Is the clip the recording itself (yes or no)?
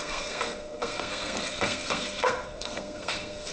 no